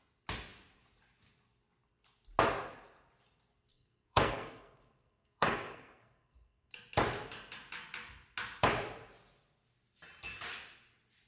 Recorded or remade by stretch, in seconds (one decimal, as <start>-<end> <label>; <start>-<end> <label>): 0.0-3.7 recorded; 3.7-6.7 remade; 6.7-11.3 recorded